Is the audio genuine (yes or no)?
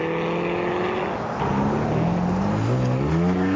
yes